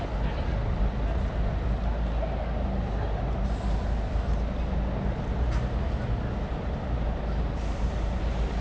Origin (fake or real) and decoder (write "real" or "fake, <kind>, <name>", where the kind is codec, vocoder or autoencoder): real